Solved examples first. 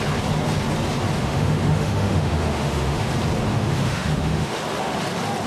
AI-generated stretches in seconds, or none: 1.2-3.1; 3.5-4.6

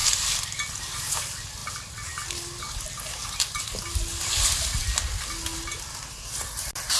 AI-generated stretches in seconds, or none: none

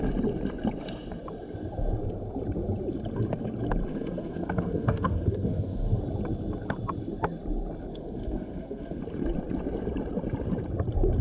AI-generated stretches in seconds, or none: 3.9-6.0; 7.9-9.0

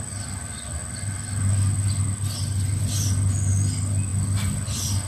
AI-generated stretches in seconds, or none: none

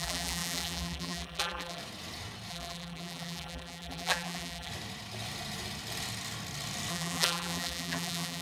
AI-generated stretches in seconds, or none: 0.0-1.8; 2.5-4.7; 6.9-8.4